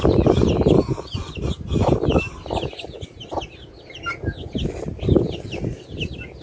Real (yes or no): yes